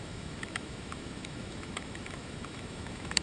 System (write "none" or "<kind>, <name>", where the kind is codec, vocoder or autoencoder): autoencoder, DAC-VAE